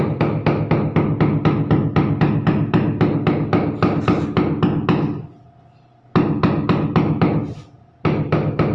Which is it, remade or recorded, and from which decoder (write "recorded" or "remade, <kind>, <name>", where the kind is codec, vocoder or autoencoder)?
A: recorded